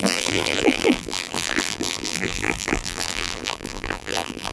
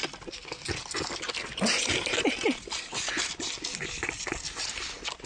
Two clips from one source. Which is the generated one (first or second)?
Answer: first